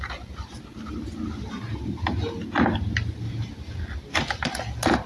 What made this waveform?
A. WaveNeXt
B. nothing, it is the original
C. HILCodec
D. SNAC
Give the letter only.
B